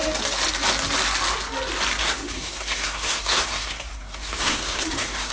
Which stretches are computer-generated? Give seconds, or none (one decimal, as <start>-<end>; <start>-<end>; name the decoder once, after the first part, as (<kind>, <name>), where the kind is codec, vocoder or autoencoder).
2.0-5.3 (codec, SNAC)